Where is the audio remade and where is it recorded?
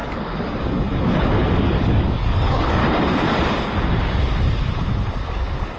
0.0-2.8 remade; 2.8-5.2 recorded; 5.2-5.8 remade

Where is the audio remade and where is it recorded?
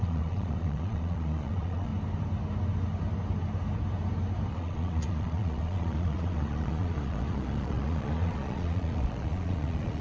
0.0-1.9 remade; 1.9-4.5 recorded; 4.5-10.0 remade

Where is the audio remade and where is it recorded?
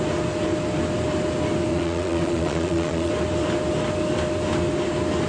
0.0-1.7 recorded; 1.7-3.1 remade; 3.1-5.3 recorded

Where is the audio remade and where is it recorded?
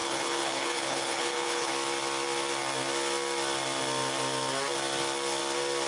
0.0-1.7 remade; 1.7-5.9 recorded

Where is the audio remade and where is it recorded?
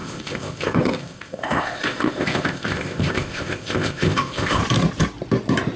0.0-4.6 remade; 4.6-5.8 recorded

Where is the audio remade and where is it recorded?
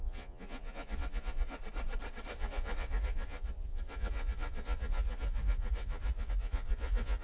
0.0-1.6 remade; 1.6-2.3 recorded; 2.3-7.2 remade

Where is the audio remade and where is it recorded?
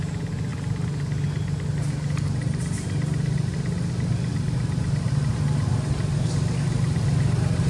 0.0-7.7 recorded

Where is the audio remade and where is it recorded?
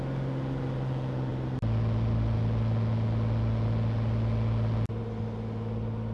0.0-6.1 recorded